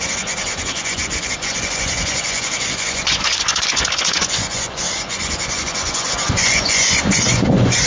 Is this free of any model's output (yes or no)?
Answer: no